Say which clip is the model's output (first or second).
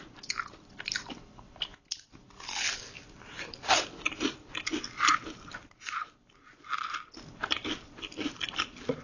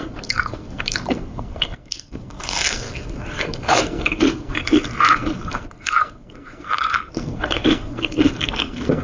second